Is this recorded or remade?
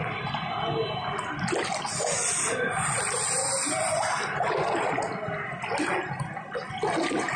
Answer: recorded